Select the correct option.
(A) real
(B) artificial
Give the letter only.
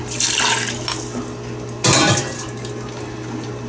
A